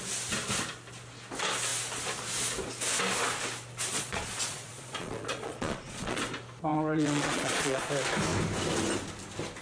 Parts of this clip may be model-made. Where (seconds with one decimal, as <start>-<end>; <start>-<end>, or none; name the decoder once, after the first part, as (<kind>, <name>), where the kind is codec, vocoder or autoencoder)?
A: 3.9-6.2 (vocoder, Vocos); 6.7-7.9